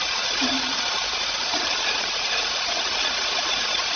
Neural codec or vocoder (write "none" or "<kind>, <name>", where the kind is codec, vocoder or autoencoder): vocoder, Vocos